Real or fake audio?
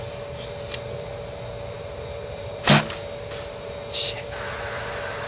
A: real